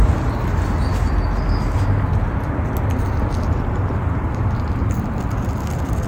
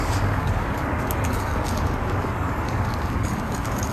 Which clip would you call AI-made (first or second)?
second